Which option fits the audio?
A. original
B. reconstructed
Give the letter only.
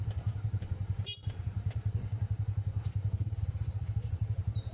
B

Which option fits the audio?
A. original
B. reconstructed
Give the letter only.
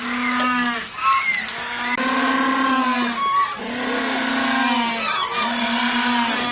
A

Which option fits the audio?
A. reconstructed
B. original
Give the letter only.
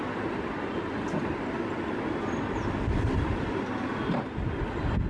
B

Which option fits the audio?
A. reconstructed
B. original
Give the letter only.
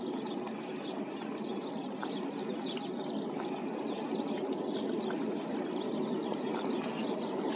B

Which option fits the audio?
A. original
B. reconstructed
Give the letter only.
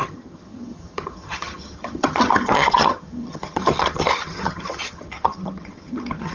B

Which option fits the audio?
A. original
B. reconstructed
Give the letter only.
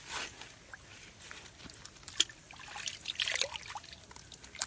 A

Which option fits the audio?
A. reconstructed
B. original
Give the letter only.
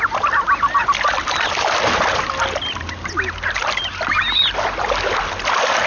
B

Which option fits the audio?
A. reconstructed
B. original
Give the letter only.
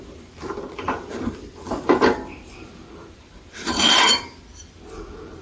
A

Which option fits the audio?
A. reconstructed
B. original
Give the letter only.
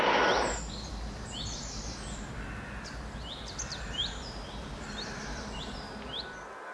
B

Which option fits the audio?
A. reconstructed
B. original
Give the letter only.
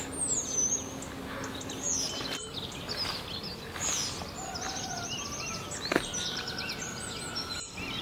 B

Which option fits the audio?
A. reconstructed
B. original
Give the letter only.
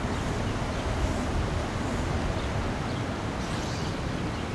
B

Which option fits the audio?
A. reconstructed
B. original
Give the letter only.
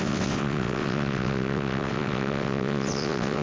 A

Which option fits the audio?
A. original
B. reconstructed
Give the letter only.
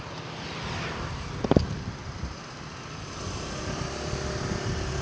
A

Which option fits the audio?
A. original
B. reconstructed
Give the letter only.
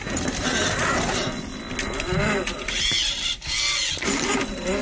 A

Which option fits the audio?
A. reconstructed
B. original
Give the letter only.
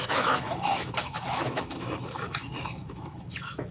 A